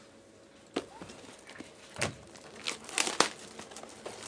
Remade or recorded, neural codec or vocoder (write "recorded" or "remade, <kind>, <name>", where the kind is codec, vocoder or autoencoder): recorded